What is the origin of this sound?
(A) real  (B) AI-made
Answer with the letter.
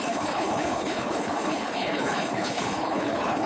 B